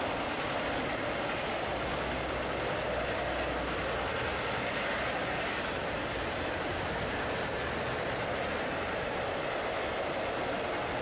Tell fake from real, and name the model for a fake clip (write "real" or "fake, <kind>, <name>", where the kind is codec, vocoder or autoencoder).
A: real